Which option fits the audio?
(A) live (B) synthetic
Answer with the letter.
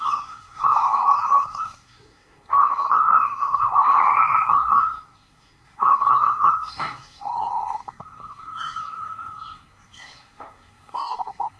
B